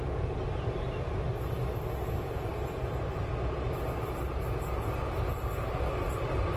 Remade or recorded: recorded